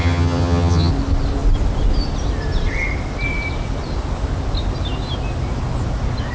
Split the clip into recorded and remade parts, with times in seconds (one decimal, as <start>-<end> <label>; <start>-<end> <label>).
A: 0.0-0.9 remade; 0.9-6.3 recorded